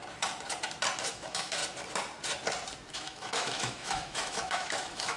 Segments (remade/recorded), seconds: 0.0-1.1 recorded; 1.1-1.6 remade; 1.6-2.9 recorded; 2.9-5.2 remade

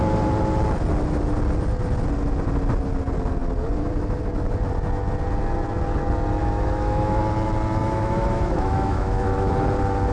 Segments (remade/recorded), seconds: 0.0-6.4 recorded; 6.4-7.2 remade; 7.2-7.8 recorded; 7.8-9.5 remade; 9.5-10.1 recorded

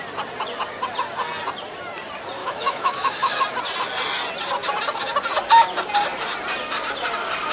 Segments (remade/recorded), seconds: 0.0-2.4 recorded; 2.4-3.4 remade; 3.4-7.5 recorded

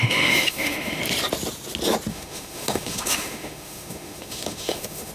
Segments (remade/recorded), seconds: 0.0-1.0 remade; 1.0-2.1 recorded; 2.1-5.1 remade